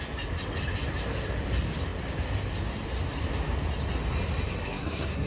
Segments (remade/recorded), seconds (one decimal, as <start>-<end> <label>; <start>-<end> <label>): 0.0-4.6 recorded; 4.6-5.3 remade